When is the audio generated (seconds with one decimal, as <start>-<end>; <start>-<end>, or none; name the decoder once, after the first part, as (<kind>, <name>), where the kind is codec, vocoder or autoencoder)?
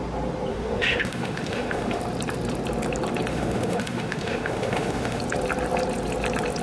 0.5-2.0 (autoencoder, DAC-VAE); 3.3-5.2